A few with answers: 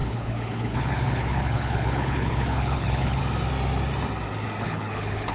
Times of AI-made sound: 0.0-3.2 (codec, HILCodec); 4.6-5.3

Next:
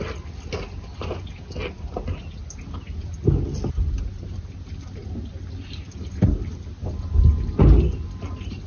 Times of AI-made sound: none

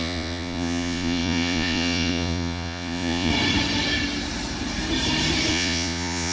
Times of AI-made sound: 0.0-3.3 (vocoder, Vocos); 5.5-6.3

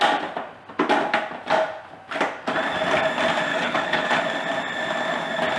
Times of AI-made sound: 3.5-4.2 (codec, HILCodec)

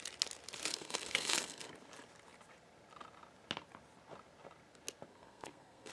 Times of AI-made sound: 0.7-1.7 (codec, SNAC); 5.1-5.9

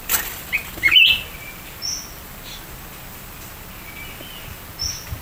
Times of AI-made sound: none

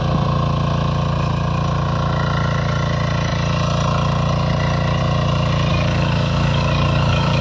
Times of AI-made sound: 5.7-7.4 (codec, DAC)

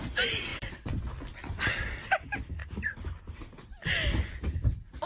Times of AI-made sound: 0.5-1.0 (vocoder, BigVGAN v2); 2.6-3.2